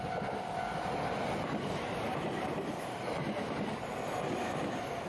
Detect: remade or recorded recorded